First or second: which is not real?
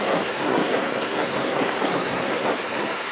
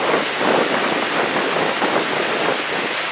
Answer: first